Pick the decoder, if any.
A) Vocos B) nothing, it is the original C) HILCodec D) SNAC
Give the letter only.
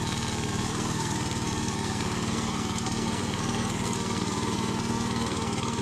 D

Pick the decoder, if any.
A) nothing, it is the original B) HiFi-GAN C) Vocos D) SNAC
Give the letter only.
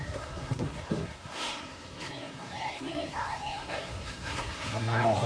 D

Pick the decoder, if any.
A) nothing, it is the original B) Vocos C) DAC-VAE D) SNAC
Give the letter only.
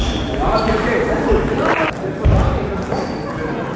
A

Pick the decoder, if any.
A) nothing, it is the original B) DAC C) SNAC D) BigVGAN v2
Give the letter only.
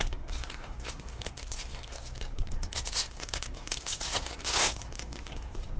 C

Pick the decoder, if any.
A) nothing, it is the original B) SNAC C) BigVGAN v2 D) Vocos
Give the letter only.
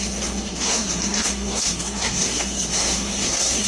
B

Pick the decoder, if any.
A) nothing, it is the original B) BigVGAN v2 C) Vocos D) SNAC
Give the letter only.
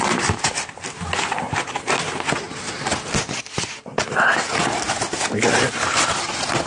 A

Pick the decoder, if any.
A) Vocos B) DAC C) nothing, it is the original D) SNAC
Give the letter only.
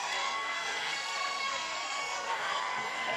D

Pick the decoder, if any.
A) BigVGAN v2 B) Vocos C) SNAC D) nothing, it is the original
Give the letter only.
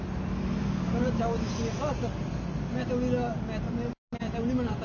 D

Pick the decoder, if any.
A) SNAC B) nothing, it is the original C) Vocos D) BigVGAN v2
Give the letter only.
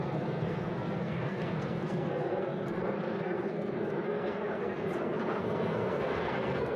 A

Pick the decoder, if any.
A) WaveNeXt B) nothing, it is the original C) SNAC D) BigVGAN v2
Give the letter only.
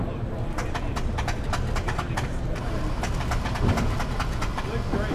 B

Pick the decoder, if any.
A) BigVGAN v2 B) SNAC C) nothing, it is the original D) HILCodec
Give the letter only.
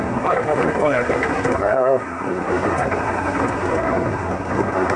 B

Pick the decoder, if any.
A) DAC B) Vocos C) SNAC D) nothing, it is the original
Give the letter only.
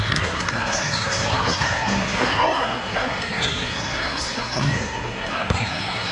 C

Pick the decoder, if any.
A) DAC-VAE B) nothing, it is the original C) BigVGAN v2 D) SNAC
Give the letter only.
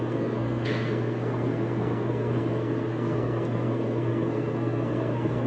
D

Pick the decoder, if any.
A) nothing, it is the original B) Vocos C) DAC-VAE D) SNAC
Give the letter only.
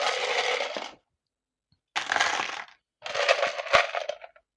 A